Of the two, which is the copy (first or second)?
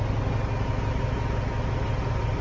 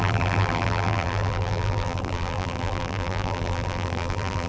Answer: second